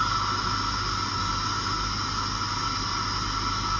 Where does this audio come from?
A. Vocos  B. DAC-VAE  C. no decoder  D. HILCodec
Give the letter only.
C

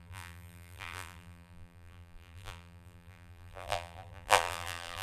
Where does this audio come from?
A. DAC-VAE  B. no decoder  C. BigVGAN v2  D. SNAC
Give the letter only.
C